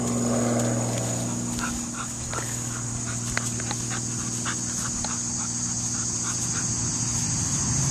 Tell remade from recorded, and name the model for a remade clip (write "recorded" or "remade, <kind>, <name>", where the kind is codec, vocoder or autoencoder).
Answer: recorded